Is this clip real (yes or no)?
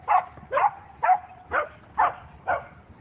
yes